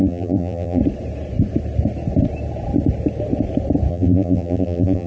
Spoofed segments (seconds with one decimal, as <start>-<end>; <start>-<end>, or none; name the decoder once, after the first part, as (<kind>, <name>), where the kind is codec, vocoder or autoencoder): 0.0-0.8 (vocoder, BigVGAN v2); 3.9-5.1

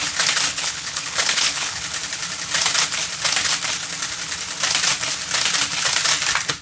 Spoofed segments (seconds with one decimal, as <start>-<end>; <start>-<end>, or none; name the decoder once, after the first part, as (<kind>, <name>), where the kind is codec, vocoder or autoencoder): 0.5-1.8 (codec, HILCodec)

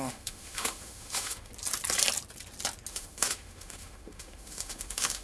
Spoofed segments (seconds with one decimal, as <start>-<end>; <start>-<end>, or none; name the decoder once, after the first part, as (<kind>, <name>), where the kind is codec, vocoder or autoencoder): 0.0-1.5 (autoencoder, DAC-VAE); 2.9-5.2

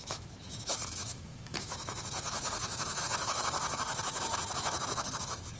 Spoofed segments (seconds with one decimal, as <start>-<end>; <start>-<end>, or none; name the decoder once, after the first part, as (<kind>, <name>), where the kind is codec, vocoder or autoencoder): 0.0-5.6 (autoencoder, DAC-VAE)

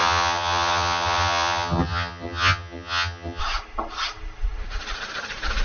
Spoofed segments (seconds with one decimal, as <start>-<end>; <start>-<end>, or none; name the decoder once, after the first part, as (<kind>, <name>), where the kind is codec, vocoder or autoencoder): 0.0-3.4 (vocoder, HiFi-GAN)

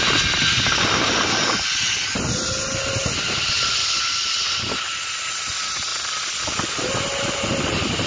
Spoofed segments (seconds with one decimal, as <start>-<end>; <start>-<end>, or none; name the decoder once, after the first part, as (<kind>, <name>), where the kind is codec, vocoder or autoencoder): none

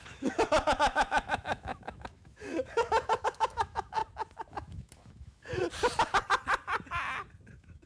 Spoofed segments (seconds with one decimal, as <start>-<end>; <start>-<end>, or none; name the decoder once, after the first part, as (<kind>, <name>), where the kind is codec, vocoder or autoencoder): 0.0-4.0 (autoencoder, DAC-VAE); 4.5-5.6; 7.5-7.9

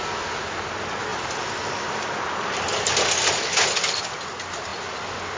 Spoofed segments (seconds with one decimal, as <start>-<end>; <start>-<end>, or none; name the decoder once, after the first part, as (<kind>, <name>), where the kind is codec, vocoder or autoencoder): none